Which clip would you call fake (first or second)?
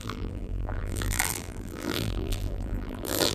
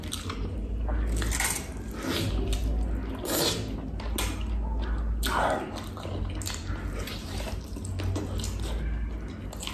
first